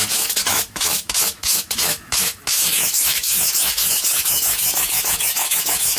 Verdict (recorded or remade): remade